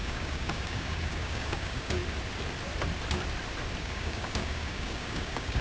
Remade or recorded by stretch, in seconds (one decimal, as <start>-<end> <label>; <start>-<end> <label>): 0.0-2.0 remade; 2.0-3.8 recorded; 3.8-5.6 remade